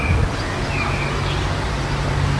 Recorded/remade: recorded